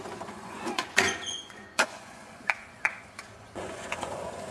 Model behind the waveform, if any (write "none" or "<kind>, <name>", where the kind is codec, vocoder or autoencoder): vocoder, Vocos